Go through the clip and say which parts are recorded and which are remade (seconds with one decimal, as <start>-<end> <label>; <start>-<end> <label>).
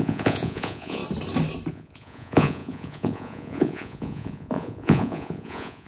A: 0.0-1.0 remade; 1.0-1.7 recorded; 1.7-5.9 remade